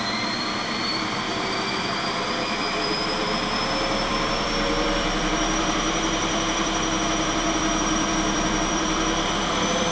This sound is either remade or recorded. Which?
remade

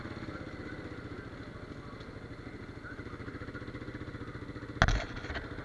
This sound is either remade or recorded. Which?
recorded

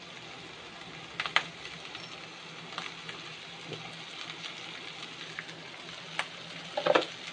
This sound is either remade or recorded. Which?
recorded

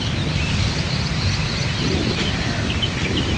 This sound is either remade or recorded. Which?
recorded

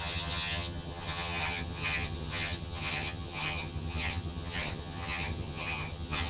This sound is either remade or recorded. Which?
remade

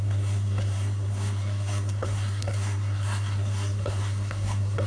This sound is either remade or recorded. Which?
remade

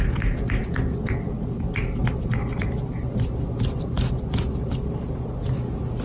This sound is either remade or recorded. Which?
recorded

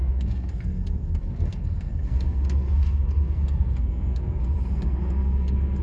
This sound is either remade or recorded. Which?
remade